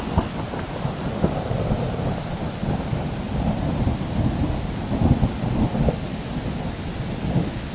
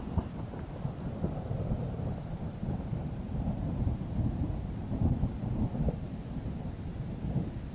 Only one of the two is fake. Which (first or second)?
second